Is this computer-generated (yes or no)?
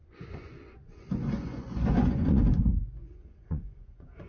yes